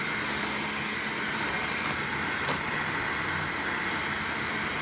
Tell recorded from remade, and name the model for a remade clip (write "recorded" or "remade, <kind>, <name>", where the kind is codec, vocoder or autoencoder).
recorded